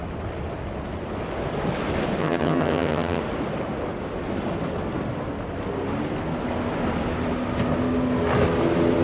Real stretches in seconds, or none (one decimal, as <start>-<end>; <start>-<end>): 0.0-2.2; 3.2-9.0